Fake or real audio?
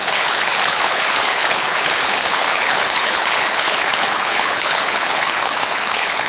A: fake